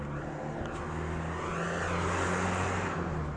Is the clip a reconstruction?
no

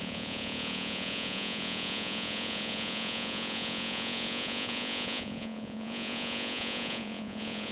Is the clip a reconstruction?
yes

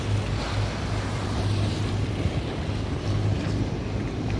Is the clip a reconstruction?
no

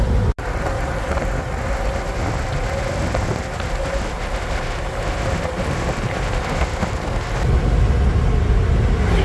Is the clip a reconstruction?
no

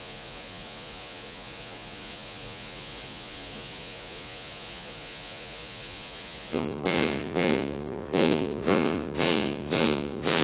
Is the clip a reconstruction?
yes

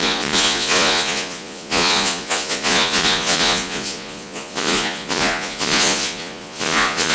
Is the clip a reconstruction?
yes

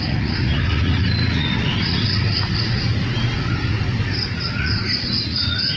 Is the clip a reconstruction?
yes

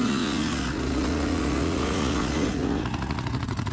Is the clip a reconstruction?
yes